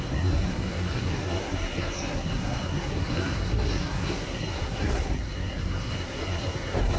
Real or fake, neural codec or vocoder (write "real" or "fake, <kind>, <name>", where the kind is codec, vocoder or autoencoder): fake, codec, SNAC